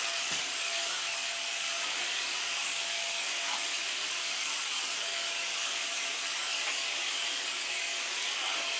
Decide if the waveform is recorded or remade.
remade